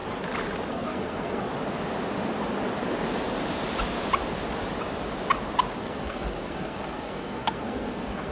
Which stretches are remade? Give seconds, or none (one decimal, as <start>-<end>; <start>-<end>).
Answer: 0.7-1.5; 5.8-8.3